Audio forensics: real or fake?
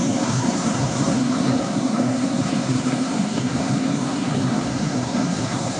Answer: fake